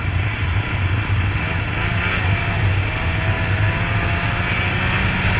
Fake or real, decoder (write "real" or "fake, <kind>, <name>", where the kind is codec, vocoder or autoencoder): real